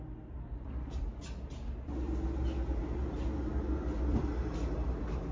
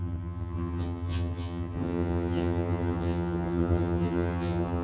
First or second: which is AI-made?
second